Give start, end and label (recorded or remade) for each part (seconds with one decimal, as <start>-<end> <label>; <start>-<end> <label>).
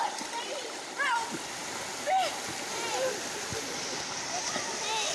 0.0-5.1 recorded